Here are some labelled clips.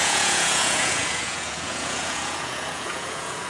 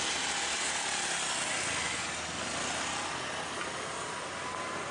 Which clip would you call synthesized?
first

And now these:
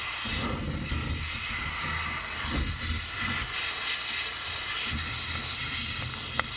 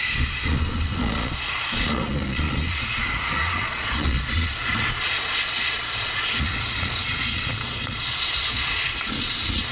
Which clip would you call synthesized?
second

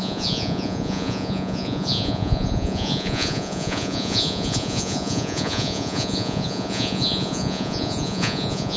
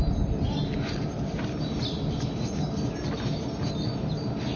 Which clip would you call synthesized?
first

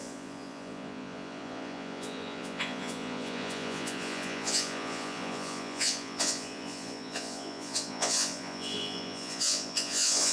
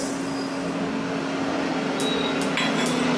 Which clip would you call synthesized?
first